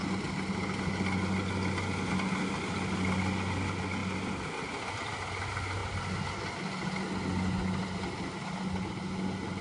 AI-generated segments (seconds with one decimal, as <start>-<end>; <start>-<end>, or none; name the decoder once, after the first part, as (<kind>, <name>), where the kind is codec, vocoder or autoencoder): none